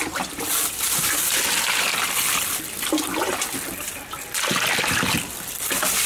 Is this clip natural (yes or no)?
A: yes